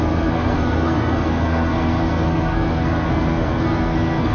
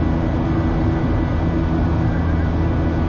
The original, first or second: second